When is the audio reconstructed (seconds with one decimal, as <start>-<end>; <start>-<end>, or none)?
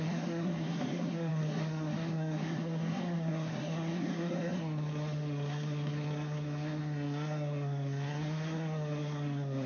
0.0-9.7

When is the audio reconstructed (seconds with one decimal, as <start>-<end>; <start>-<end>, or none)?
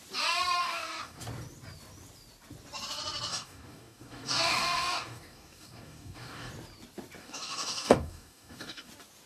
0.6-1.2; 3.3-6.5; 7.2-8.9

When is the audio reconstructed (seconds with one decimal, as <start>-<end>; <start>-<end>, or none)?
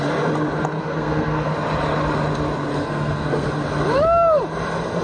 0.8-1.5; 2.7-3.5